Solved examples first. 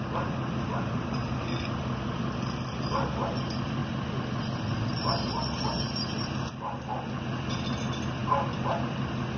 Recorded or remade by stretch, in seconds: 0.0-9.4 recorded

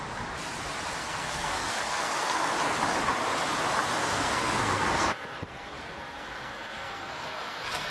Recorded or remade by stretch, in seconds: 0.0-1.0 recorded; 1.0-2.5 remade; 2.5-4.0 recorded; 4.0-7.9 remade

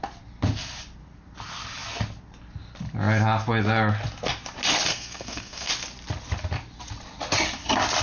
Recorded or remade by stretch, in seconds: 0.0-4.9 recorded; 4.9-5.7 remade; 5.7-8.0 recorded

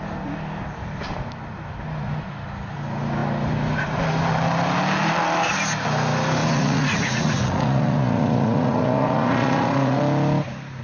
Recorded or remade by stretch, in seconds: 0.0-6.4 recorded; 6.4-10.0 remade; 10.0-10.8 recorded